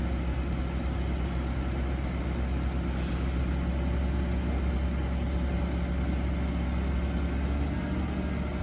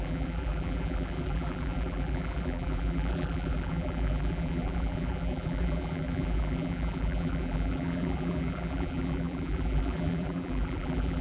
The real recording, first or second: first